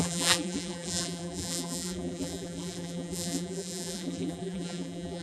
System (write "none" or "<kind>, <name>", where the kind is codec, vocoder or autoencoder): vocoder, BigVGAN v2